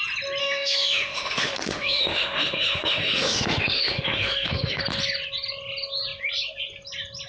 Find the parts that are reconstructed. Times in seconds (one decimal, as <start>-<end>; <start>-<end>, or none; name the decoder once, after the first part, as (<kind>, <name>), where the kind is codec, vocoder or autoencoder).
0.4-4.8 (autoencoder, DAC-VAE)